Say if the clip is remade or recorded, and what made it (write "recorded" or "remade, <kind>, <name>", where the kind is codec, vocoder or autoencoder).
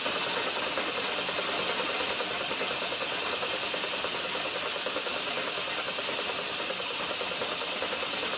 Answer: recorded